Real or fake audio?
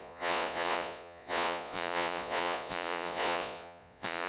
fake